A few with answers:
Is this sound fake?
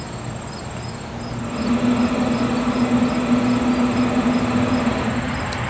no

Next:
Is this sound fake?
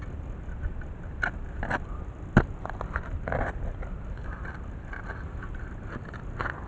no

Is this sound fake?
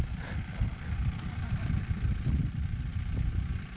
no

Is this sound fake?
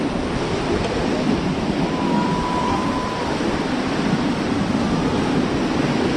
no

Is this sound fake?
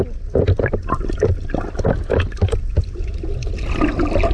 no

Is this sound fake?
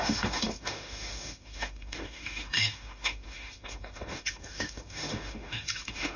yes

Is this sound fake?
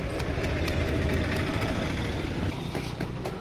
no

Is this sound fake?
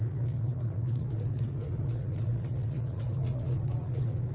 yes